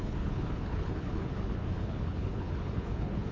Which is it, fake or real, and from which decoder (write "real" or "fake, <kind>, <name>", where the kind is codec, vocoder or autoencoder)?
fake, codec, HILCodec